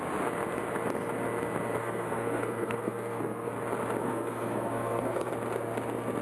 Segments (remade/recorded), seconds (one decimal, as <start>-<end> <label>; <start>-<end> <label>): 0.0-1.8 recorded; 1.8-3.5 remade; 3.5-4.0 recorded; 4.0-5.3 remade; 5.3-6.2 recorded